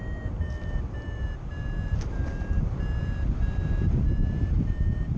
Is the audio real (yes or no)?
yes